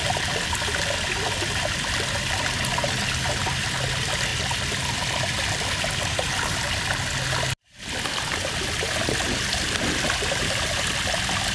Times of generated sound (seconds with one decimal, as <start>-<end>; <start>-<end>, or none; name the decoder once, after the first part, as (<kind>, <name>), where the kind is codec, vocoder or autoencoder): none